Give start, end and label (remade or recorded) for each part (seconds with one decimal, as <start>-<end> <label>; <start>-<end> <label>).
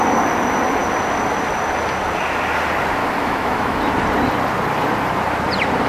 0.0-3.0 recorded; 3.0-3.8 remade; 3.8-5.9 recorded